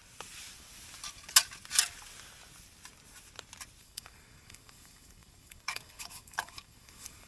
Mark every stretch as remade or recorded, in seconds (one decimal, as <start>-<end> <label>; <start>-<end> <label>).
0.0-3.8 recorded; 3.8-7.3 remade